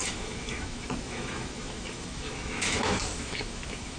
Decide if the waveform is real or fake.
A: fake